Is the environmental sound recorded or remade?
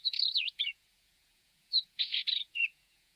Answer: remade